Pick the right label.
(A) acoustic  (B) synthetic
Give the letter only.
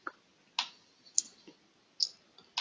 A